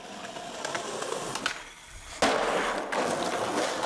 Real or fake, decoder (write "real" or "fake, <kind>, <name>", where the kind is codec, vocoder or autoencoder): real